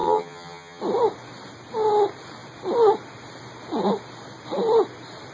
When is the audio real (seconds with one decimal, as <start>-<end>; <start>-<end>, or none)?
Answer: 0.8-5.3